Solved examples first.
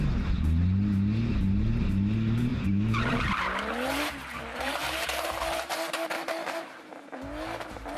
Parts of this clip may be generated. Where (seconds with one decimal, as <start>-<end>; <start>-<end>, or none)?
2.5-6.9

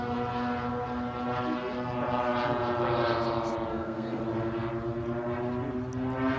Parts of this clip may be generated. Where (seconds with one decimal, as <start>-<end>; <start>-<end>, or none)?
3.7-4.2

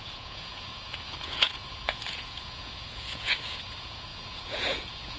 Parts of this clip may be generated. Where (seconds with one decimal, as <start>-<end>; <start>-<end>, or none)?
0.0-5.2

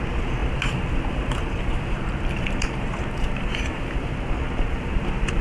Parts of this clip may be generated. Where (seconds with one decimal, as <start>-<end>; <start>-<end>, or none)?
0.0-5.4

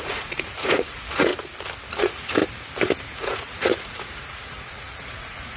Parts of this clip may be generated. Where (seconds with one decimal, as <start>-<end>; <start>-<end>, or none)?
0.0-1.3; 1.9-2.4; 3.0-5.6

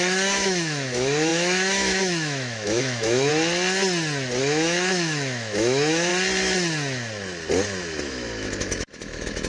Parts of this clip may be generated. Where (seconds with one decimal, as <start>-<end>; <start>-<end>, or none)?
0.0-3.3; 4.4-6.1; 8.0-9.5